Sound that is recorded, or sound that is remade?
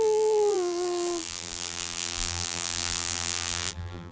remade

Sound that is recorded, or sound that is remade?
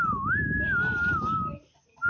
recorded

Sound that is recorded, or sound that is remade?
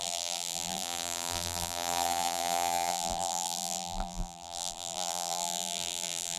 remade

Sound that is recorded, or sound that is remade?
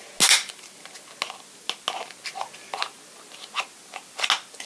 recorded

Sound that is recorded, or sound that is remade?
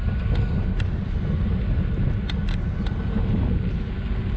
recorded